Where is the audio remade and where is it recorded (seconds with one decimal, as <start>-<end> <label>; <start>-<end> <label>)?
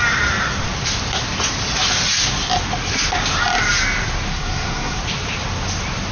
0.0-4.3 recorded; 4.3-5.0 remade; 5.0-6.1 recorded